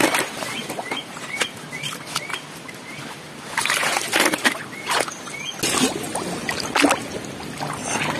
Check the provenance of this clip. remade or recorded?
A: recorded